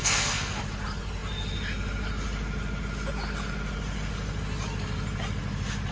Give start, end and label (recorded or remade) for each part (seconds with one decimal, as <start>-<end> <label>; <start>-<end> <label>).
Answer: 0.0-0.6 remade; 0.6-5.9 recorded